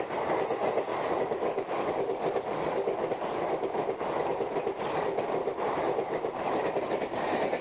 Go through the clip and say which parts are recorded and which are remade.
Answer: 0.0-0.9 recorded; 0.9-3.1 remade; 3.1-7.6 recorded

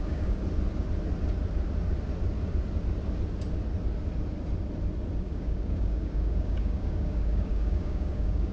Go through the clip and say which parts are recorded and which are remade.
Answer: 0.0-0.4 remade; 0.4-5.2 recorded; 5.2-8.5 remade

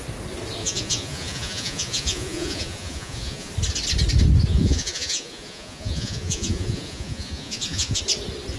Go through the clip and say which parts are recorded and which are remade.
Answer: 0.0-0.6 recorded; 0.6-3.5 remade; 3.5-4.5 recorded; 4.5-8.0 remade; 8.0-8.6 recorded